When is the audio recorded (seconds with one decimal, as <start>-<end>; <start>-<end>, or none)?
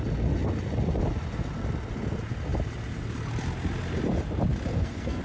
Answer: 0.0-4.7